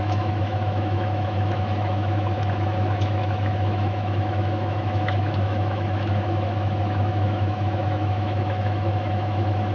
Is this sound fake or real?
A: fake